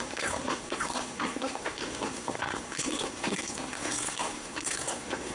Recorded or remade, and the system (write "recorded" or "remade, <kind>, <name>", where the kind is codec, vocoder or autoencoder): remade, codec, SNAC